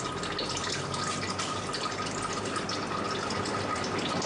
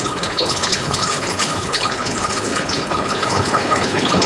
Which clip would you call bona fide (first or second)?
first